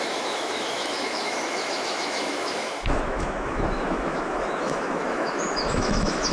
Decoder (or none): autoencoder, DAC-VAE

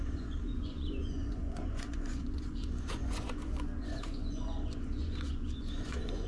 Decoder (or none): vocoder, Vocos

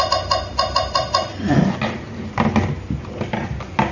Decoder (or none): none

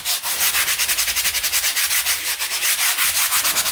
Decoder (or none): none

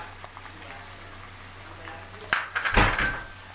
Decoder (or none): none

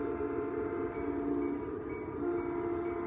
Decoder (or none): none